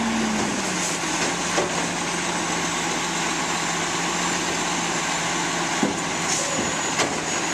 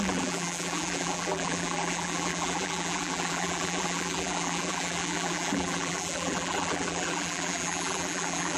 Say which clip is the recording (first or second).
first